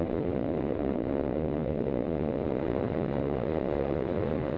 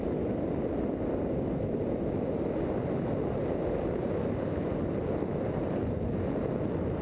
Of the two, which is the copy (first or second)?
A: first